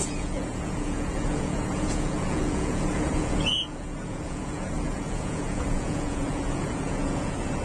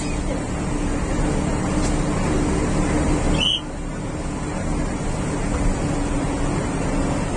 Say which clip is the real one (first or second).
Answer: second